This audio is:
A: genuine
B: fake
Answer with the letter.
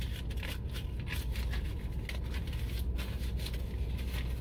A